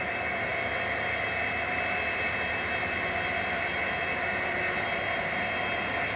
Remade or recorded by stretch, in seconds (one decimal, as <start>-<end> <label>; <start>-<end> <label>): 0.0-6.2 recorded